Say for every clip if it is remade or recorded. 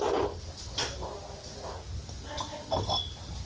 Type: recorded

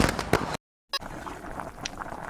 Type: recorded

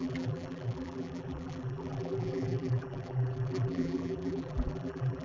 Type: remade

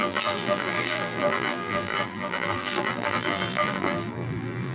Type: remade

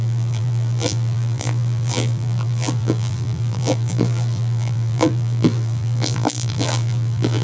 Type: remade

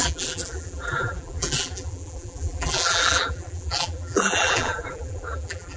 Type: remade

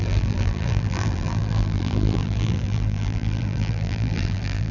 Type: remade